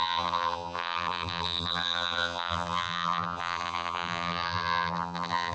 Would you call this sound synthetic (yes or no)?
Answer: yes